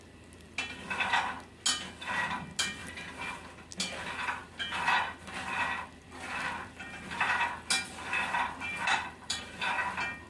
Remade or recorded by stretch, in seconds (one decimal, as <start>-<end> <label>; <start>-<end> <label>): 0.0-2.8 recorded; 2.8-3.3 remade; 3.3-8.7 recorded; 8.7-9.4 remade; 9.4-10.3 recorded